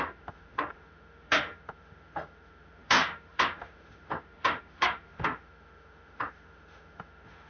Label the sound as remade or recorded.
remade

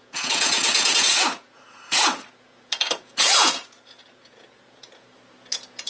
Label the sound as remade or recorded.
remade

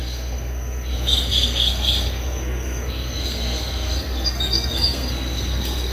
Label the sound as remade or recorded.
remade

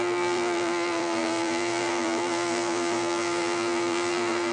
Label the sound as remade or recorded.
remade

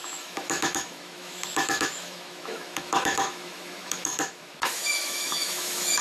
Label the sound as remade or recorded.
remade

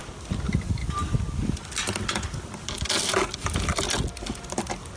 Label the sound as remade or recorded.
recorded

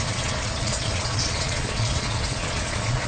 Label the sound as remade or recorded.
remade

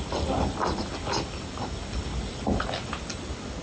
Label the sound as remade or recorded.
recorded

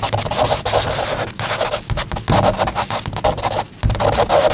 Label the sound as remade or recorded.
recorded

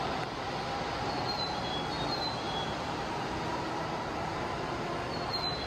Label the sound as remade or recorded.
recorded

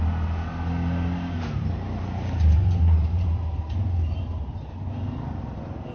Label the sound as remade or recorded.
recorded